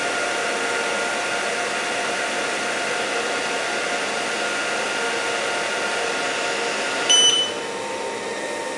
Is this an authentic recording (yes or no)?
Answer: yes